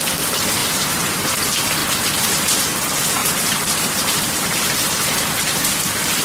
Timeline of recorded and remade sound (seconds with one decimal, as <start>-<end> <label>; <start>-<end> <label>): 0.0-0.6 recorded; 0.6-1.4 remade; 1.4-1.8 recorded; 1.8-2.6 remade; 2.6-3.2 recorded; 3.2-5.1 remade; 5.1-6.2 recorded